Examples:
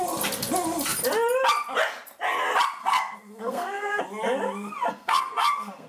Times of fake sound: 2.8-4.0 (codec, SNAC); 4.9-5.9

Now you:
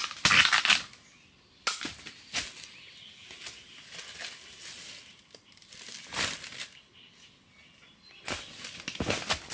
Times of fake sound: none

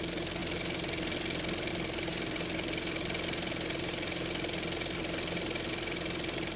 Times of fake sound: none

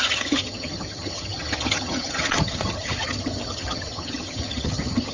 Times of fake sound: 0.0-5.1 (vocoder, HiFi-GAN)

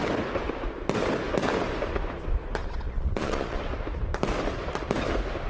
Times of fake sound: 2.6-3.6 (vocoder, Vocos)

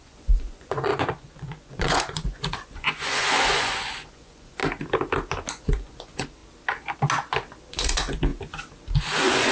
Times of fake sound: 0.0-4.6 (vocoder, Vocos); 5.5-6.4; 7.7-8.3; 9.0-9.5

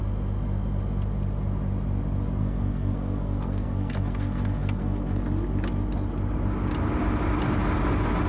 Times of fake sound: 2.4-5.2 (codec, SNAC)